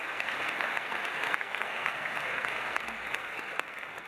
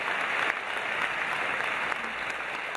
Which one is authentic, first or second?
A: second